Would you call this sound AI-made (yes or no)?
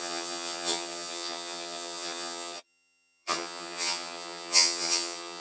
yes